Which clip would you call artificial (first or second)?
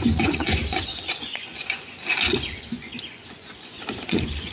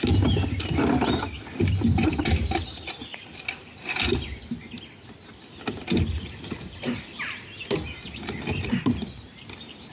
first